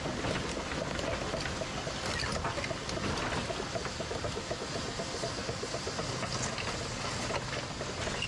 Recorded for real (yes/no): yes